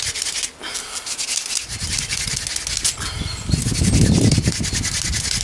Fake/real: real